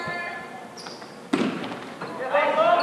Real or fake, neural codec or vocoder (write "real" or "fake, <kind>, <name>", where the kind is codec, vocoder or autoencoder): real